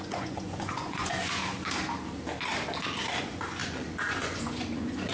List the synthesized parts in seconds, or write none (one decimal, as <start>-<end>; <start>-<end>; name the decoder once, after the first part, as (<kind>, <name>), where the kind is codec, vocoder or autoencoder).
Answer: 0.0-1.4 (vocoder, Vocos); 3.2-5.1